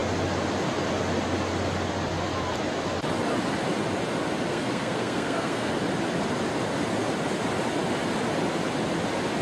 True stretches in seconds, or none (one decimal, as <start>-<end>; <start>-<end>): 0.0-4.5; 5.7-9.4